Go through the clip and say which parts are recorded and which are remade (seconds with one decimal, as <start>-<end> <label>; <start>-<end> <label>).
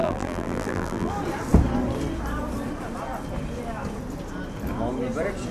0.0-1.1 remade; 1.1-5.5 recorded